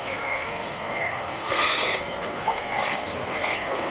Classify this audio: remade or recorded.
remade